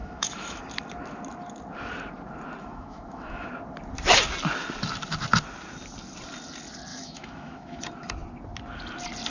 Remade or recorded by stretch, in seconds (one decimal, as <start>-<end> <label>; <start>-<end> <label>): 0.0-0.6 remade; 0.6-2.6 recorded; 2.6-3.5 remade; 3.5-6.9 recorded; 6.9-7.8 remade; 7.8-9.3 recorded